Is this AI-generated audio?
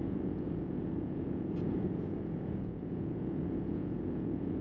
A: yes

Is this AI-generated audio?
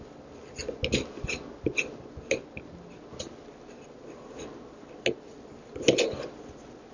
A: no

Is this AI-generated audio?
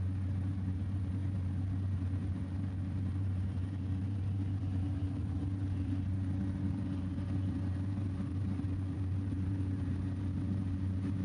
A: yes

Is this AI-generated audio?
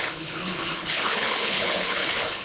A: yes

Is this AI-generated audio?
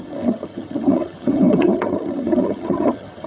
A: yes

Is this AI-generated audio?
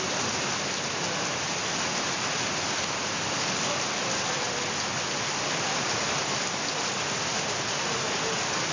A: no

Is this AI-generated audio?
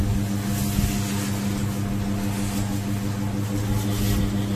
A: no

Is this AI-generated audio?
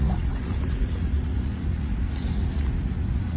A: yes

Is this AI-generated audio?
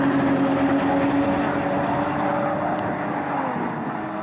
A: no